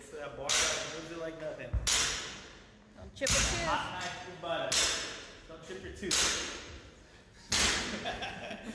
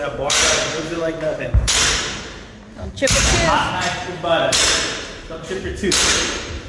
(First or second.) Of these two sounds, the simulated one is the second